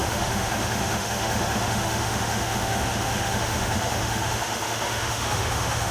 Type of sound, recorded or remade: remade